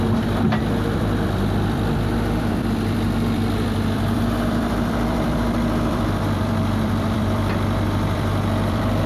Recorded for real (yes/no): no